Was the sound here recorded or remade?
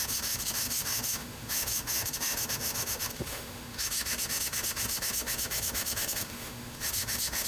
remade